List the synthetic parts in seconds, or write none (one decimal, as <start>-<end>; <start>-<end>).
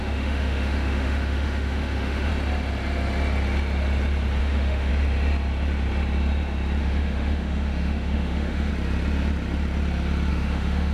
0.0-2.3; 4.4-4.9; 6.8-8.7; 10.3-10.9